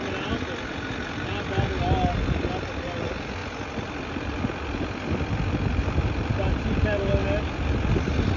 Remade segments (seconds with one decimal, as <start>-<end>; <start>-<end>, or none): none